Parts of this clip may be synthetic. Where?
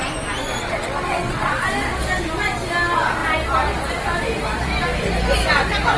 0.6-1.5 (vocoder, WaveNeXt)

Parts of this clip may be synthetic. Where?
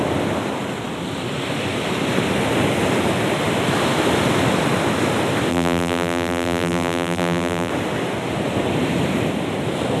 5.5-7.7 (vocoder, BigVGAN v2)